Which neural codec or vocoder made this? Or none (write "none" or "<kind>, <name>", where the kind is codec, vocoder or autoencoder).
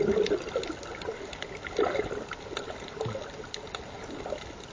none